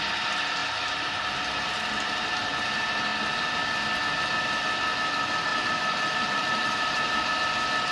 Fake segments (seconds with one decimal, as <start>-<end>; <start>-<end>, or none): 0.6-1.2; 5.5-7.4